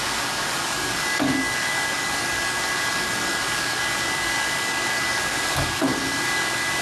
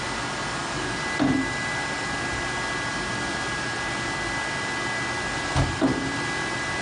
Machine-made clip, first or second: first